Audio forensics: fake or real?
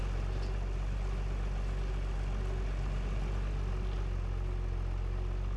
real